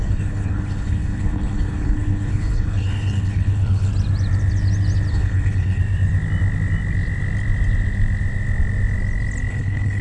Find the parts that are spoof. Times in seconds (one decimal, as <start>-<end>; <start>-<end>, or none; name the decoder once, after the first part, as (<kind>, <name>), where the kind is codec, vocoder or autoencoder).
0.0-3.9 (codec, HILCodec); 5.1-5.8; 9.5-10.0